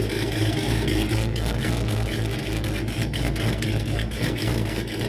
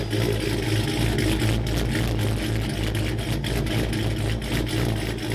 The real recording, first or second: second